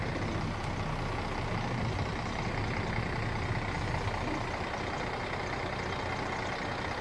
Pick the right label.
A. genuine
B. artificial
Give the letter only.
A